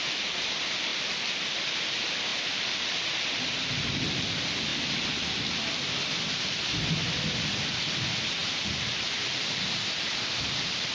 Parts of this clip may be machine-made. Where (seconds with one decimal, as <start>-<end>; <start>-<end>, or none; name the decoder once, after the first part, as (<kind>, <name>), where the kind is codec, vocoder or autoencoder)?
0.9-1.7 (vocoder, BigVGAN v2); 4.7-5.9; 8.4-10.9